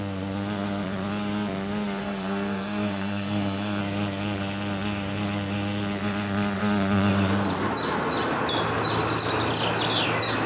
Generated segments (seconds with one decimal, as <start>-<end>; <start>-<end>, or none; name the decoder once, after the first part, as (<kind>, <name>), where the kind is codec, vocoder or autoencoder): 2.0-3.8 (codec, SNAC)